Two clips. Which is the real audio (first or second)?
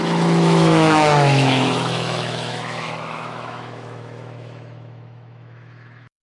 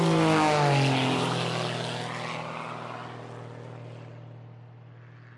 second